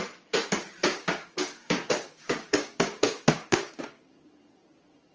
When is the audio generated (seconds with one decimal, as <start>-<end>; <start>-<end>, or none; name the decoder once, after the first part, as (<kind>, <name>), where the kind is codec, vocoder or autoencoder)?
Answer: 0.9-4.0 (codec, DAC)